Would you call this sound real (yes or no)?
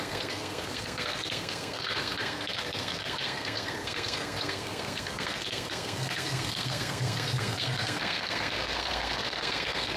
no